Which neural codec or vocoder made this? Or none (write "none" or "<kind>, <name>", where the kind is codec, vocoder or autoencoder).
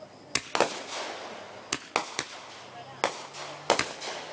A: none